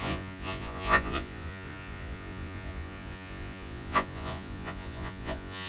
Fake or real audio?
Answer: fake